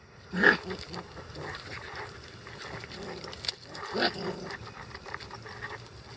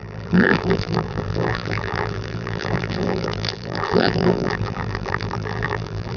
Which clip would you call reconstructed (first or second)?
second